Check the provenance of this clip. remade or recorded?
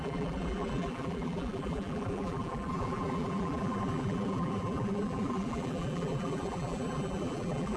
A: remade